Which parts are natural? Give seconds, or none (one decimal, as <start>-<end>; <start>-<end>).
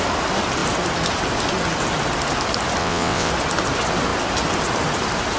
0.0-2.8; 3.3-5.4